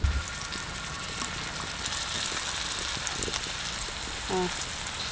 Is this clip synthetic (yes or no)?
no